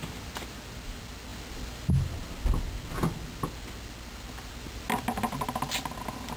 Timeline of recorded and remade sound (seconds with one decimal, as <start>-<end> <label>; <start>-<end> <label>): 0.0-6.4 recorded